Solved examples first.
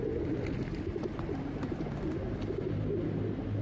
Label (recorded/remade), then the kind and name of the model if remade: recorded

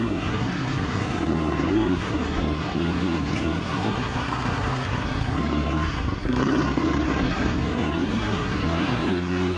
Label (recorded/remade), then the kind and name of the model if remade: remade, codec, SNAC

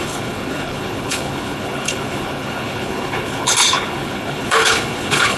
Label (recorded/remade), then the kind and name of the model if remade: remade, codec, HILCodec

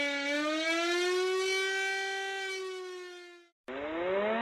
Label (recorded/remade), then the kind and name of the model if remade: recorded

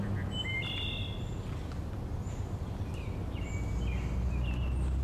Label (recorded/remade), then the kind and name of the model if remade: recorded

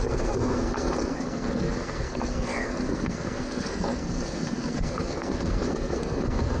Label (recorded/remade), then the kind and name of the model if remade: remade, codec, SNAC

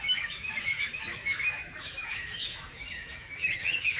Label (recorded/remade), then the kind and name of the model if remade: remade, autoencoder, DAC-VAE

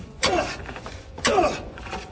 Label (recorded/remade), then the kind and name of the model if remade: remade, vocoder, Vocos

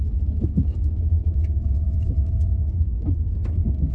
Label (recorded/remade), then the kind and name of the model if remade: remade, autoencoder, DAC-VAE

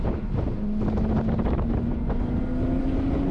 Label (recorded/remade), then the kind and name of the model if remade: recorded